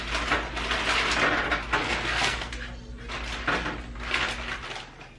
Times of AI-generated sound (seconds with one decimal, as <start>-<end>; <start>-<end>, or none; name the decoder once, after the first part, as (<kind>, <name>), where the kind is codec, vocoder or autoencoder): 1.8-2.5 (codec, SNAC)